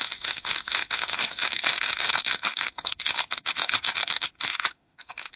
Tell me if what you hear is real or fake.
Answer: fake